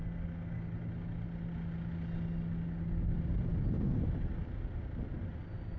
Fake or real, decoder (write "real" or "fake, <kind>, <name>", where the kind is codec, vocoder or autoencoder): real